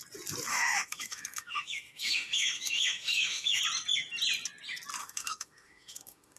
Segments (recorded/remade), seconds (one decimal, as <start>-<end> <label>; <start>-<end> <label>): 0.0-0.5 recorded; 0.5-3.6 remade; 3.6-5.0 recorded; 5.0-6.4 remade

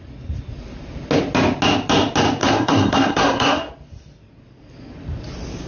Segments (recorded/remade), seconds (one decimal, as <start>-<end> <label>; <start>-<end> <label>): 0.0-2.4 recorded; 2.4-3.7 remade; 3.7-5.7 recorded

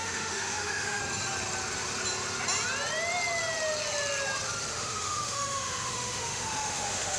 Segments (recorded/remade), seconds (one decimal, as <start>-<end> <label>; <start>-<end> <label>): 0.0-1.0 remade; 1.0-4.7 recorded; 4.7-7.2 remade

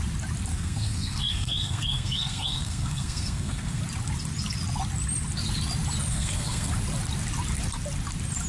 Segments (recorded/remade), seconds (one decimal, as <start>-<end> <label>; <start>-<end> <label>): 0.0-0.5 recorded; 0.5-3.8 remade; 3.8-6.1 recorded; 6.1-6.7 remade; 6.7-8.5 recorded

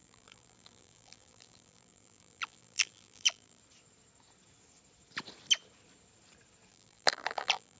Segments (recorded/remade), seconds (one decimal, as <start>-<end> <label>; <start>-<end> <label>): 0.0-3.6 remade; 3.6-6.7 recorded; 6.7-7.8 remade

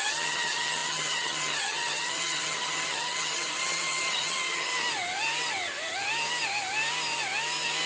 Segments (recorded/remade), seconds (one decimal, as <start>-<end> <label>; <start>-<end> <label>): 0.0-4.7 remade; 4.7-7.9 recorded

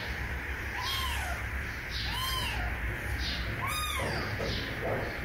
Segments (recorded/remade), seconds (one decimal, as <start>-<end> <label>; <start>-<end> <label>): 0.0-5.2 recorded